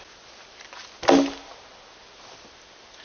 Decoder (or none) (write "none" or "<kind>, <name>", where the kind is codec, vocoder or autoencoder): none